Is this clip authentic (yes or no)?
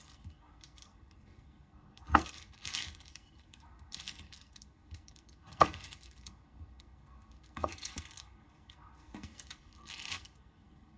no